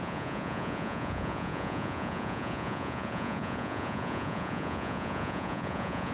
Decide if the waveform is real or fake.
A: fake